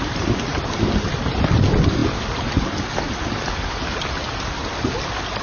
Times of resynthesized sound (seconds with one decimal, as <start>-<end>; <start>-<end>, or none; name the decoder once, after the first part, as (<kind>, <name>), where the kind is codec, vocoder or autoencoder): none